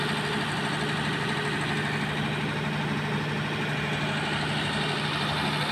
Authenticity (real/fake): real